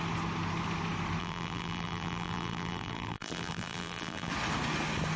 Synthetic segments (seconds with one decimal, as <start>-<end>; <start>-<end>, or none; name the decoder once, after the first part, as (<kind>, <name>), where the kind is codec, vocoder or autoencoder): 1.2-4.3 (vocoder, BigVGAN v2)